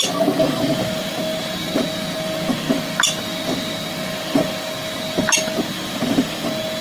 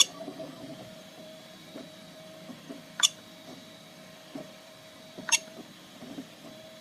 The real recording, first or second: first